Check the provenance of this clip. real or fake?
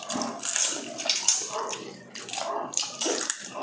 fake